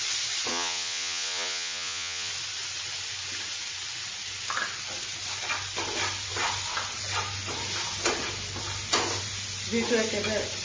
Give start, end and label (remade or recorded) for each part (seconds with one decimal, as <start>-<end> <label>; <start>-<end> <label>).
0.0-0.5 recorded; 0.5-2.3 remade; 2.3-10.6 recorded